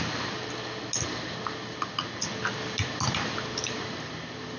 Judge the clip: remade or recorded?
recorded